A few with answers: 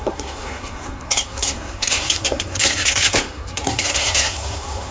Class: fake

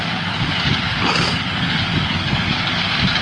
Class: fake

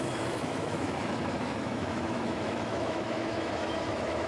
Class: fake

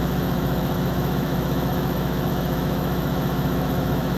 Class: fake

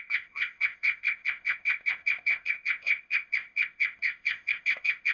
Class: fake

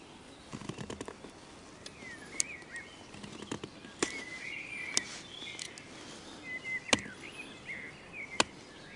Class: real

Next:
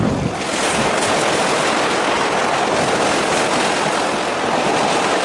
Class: real